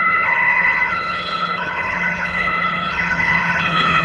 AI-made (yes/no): yes